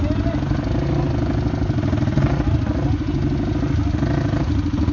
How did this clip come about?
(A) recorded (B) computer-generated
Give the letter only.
A